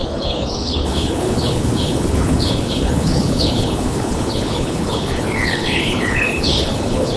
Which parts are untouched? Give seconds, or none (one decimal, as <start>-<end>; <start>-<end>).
none

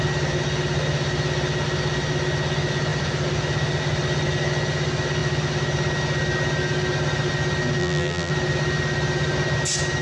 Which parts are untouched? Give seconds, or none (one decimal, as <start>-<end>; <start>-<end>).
0.0-7.8; 8.3-10.0